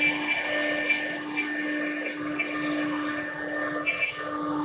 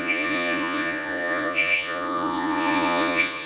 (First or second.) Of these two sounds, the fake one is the second